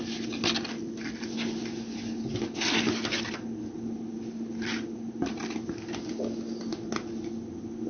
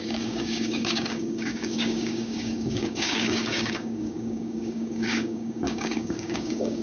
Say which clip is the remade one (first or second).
second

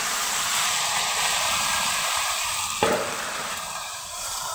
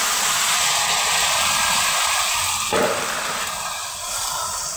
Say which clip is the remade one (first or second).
first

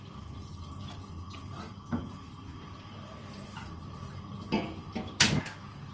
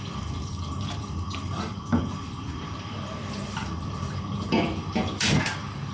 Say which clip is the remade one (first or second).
second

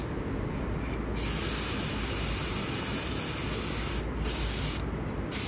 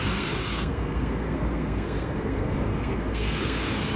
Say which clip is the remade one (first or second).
second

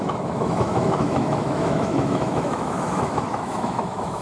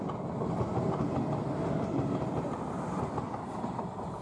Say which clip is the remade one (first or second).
first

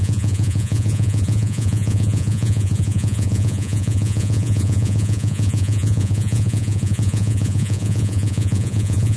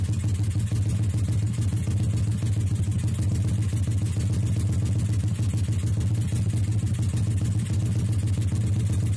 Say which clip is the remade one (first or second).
first